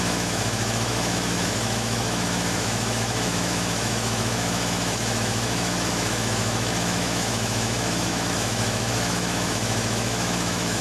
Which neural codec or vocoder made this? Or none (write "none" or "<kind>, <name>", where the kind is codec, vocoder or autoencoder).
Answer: autoencoder, DAC-VAE